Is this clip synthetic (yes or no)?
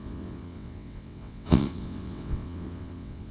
yes